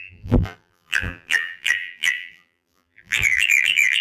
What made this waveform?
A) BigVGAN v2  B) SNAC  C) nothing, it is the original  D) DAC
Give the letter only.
A